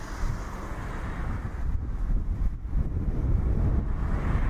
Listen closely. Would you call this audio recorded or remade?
recorded